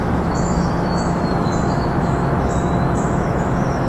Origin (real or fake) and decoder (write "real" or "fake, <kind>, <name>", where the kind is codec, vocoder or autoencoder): fake, autoencoder, DAC-VAE